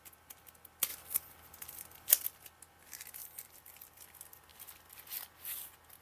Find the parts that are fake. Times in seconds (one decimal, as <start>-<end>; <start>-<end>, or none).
0.9-2.1; 3.2-4.0